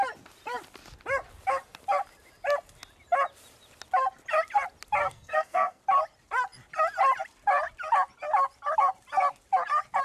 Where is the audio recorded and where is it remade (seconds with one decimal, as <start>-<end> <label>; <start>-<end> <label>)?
0.0-5.0 recorded; 5.0-5.8 remade; 5.8-10.0 recorded